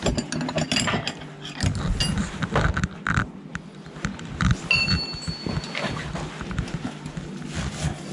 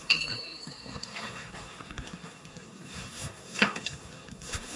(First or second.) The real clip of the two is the first